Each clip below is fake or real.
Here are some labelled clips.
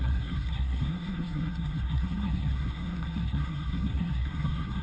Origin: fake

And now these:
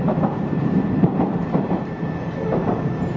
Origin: fake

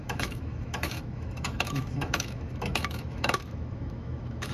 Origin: fake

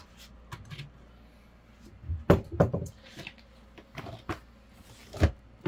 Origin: real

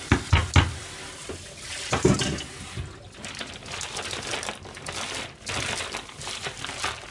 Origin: real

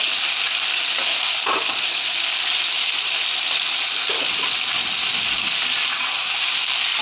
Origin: real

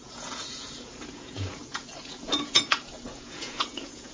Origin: fake